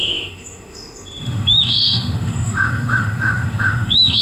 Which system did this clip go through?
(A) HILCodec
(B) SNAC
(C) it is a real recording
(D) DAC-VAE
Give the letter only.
D